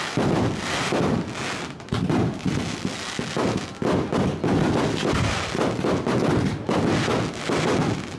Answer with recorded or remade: recorded